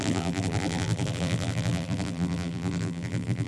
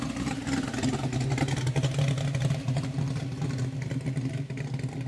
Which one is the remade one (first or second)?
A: first